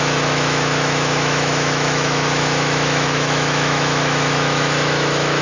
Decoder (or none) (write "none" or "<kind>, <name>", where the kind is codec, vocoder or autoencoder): autoencoder, DAC-VAE